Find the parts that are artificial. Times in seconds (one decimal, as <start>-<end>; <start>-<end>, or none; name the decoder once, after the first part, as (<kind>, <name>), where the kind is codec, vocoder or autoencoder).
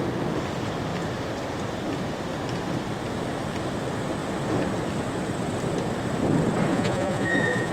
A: 6.7-7.7 (vocoder, Vocos)